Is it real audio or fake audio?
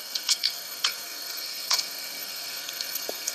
fake